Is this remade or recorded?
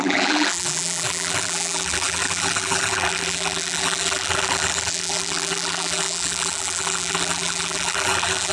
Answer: remade